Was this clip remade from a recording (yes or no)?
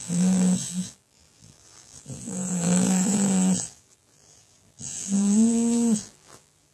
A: yes